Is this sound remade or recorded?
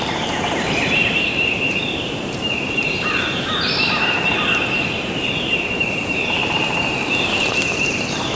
remade